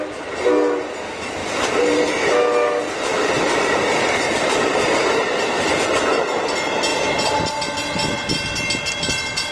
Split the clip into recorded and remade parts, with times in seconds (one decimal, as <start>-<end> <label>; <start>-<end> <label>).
0.0-1.4 recorded; 1.4-2.1 remade; 2.1-3.1 recorded; 3.1-6.0 remade; 6.0-9.5 recorded